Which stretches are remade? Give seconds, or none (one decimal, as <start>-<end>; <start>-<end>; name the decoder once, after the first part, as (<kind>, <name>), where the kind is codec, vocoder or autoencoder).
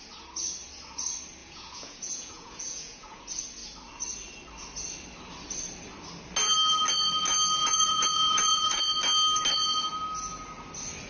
1.4-3.2 (vocoder, Vocos); 7.6-8.8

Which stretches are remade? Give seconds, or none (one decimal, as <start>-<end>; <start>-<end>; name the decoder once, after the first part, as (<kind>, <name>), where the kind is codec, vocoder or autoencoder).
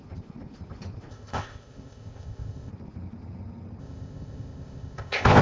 1.1-2.7 (codec, ZipCodec); 3.8-5.4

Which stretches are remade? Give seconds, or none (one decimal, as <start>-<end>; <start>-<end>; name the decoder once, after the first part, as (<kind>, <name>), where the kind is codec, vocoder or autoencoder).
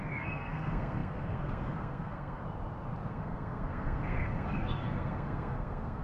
0.0-2.4 (codec, SNAC); 3.1-6.0